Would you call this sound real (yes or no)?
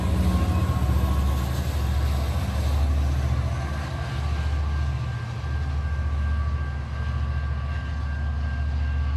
yes